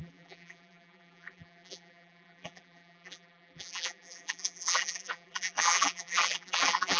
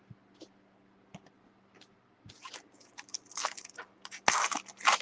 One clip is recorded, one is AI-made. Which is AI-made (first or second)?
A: first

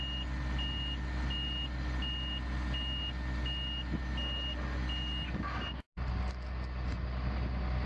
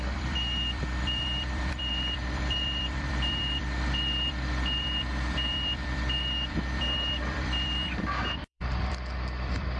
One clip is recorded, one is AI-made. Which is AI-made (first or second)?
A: second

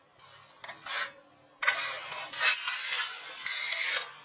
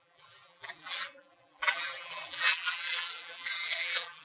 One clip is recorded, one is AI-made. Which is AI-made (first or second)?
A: second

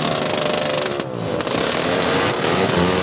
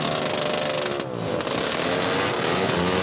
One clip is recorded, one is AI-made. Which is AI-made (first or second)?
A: first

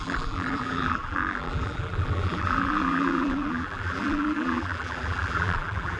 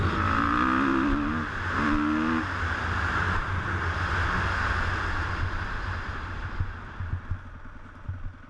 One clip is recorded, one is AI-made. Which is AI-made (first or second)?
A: first